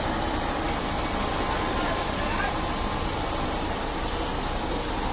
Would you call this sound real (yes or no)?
no